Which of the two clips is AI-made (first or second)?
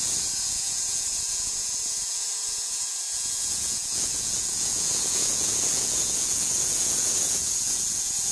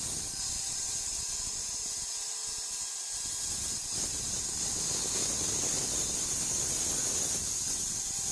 first